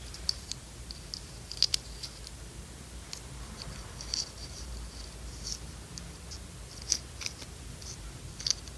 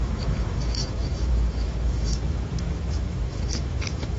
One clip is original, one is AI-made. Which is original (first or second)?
first